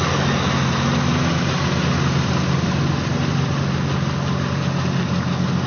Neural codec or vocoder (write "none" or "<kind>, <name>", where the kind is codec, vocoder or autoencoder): none